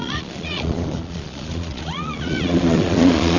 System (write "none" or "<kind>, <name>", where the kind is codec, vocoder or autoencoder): vocoder, Vocos